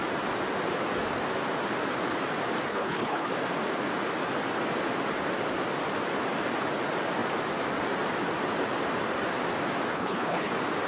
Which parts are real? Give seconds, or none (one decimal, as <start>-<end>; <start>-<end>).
0.0-2.7; 3.3-9.9; 10.5-10.9